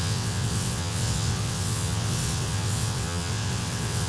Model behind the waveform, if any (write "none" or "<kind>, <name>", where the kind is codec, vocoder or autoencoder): vocoder, WaveNeXt